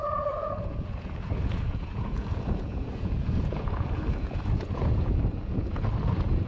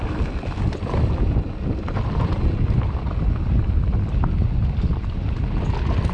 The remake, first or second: first